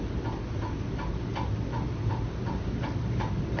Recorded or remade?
recorded